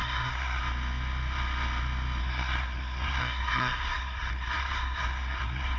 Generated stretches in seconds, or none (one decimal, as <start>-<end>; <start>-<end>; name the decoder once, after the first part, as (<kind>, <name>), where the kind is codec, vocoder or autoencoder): 0.0-0.6 (codec, SNAC); 2.2-5.8